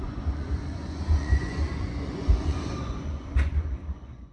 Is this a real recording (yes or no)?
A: no